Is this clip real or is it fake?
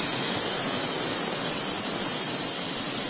real